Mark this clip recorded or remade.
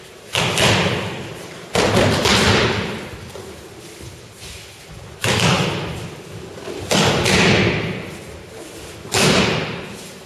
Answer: recorded